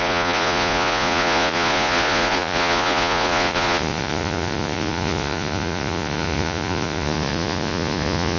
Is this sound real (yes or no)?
no